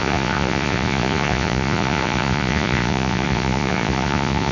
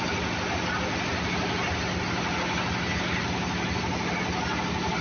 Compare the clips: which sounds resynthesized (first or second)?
first